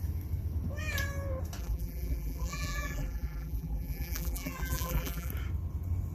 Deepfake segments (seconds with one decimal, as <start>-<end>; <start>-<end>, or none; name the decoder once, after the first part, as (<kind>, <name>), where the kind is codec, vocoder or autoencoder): 1.6-5.3 (vocoder, BigVGAN v2)

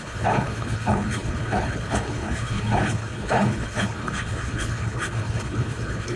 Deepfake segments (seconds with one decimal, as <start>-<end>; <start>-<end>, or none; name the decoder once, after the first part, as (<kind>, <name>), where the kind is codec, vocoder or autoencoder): 0.0-6.2 (codec, HILCodec)

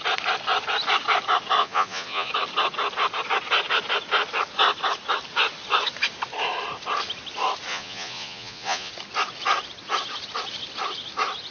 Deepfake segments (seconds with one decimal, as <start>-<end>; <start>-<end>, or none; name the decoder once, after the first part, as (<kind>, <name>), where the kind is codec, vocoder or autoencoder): 1.6-2.3 (vocoder, Vocos); 7.7-8.9

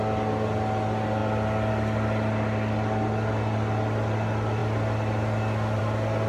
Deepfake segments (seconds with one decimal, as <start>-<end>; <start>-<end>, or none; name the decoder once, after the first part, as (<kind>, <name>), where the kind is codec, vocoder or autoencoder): none

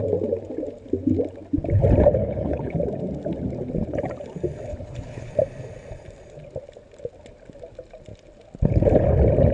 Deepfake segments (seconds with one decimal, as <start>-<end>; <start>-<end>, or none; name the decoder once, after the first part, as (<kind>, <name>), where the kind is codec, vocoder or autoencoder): 2.2-2.8 (codec, HILCodec); 4.7-5.3

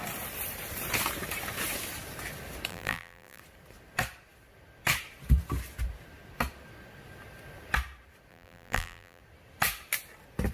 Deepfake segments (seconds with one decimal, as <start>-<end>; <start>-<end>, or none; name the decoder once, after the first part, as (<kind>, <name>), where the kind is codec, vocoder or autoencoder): 2.7-3.4 (vocoder, BigVGAN v2); 8.3-9.2